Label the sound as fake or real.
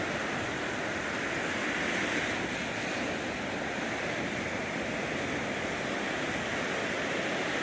real